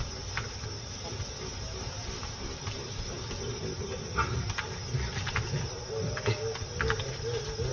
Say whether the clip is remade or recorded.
recorded